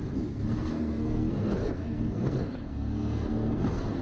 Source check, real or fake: fake